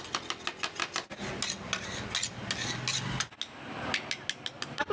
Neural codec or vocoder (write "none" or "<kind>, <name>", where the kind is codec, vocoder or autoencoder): none